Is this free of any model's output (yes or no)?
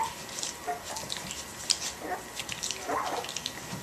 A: no